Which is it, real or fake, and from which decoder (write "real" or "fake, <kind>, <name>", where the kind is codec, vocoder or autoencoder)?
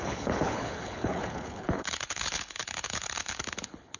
fake, codec, HILCodec